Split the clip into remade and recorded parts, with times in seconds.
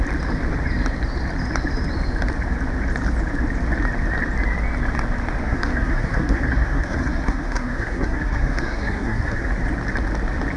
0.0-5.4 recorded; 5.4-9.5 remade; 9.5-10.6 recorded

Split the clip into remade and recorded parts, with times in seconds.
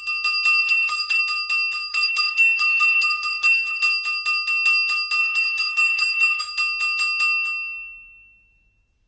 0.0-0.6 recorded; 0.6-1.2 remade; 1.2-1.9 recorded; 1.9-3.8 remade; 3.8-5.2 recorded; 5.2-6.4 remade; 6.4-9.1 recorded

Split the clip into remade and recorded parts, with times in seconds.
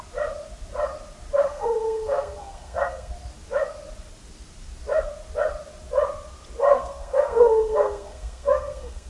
0.0-1.4 recorded; 1.4-3.1 remade; 3.1-6.7 recorded; 6.7-9.1 remade